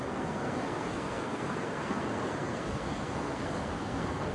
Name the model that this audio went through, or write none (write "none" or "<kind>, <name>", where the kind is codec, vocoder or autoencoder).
codec, SNAC